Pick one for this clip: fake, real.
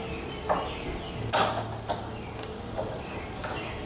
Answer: real